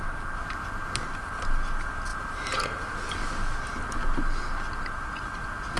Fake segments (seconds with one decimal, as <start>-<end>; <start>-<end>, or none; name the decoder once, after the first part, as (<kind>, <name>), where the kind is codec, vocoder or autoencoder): none